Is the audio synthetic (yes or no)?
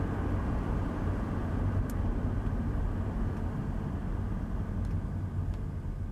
no